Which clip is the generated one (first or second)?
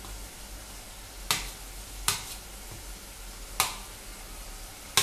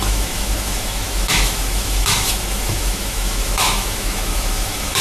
second